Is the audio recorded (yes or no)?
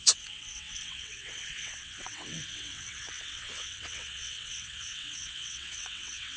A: no